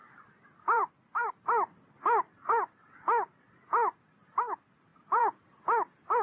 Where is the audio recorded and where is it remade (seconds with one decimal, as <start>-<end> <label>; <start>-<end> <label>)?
0.0-0.9 remade; 0.9-4.9 recorded; 4.9-5.4 remade; 5.4-6.2 recorded